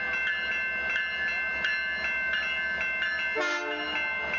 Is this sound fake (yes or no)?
no